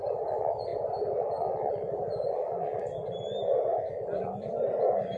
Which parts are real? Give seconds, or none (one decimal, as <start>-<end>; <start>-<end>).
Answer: 0.0-5.2

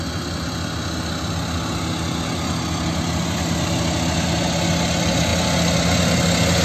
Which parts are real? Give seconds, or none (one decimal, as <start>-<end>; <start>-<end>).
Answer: 0.0-6.6

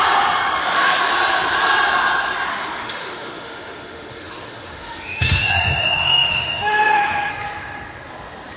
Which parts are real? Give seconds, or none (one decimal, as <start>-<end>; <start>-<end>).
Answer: 0.0-0.6; 1.1-2.5; 7.3-8.6

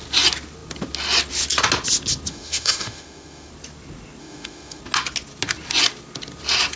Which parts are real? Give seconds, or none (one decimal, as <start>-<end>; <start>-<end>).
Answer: 0.0-2.3; 3.5-4.2; 4.8-6.8